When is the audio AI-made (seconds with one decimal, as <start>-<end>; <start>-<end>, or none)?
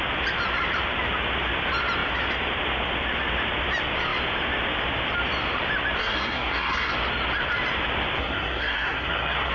6.0-6.9; 8.2-9.5